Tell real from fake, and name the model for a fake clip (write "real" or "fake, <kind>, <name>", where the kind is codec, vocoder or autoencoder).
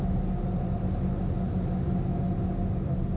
real